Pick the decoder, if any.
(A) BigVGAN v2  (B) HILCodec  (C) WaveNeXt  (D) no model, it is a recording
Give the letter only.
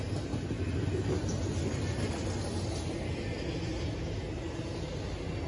D